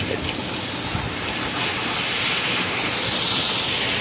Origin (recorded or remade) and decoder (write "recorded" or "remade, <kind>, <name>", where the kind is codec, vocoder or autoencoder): recorded